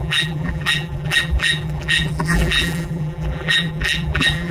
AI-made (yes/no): yes